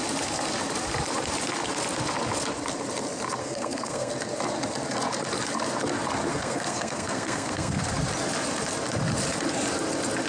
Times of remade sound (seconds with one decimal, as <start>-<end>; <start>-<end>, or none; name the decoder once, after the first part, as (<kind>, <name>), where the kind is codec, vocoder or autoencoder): 3.4-4.1 (codec, SNAC); 6.3-7.9